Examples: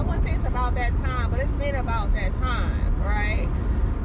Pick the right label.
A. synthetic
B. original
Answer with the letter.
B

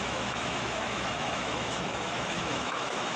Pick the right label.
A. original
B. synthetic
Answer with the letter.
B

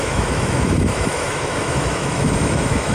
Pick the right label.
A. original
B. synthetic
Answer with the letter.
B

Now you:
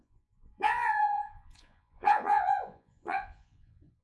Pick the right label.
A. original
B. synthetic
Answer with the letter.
B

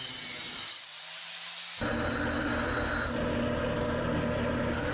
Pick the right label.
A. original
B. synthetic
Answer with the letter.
A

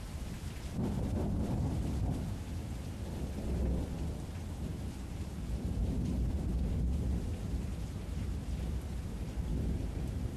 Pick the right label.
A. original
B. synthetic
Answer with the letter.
A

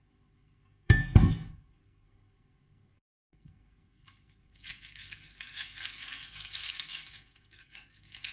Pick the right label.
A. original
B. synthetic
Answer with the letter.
B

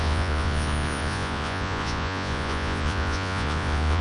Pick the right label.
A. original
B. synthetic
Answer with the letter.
B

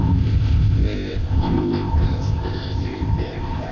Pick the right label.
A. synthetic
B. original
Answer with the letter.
A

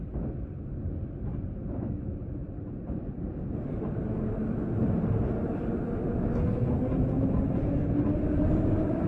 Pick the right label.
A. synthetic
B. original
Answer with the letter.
B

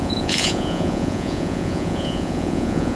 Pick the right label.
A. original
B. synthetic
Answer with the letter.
B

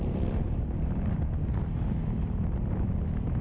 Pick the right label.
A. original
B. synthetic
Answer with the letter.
A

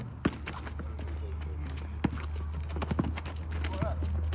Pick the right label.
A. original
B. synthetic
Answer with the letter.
A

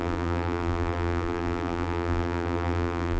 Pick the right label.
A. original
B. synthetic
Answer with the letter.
B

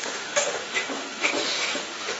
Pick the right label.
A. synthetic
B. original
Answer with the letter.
A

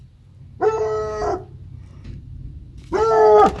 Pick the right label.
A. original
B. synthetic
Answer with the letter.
A